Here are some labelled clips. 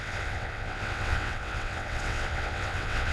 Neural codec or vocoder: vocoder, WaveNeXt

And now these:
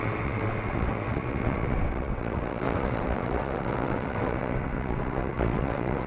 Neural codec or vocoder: vocoder, WaveNeXt